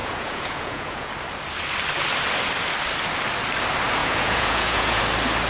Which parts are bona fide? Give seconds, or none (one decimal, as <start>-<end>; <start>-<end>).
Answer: 1.1-4.0; 5.0-5.5